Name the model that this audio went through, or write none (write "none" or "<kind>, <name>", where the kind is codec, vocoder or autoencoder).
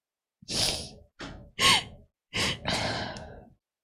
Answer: none